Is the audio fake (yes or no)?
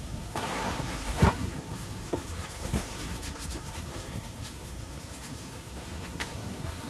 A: yes